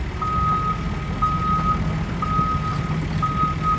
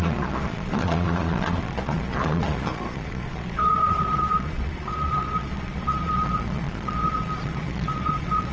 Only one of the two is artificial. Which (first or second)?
second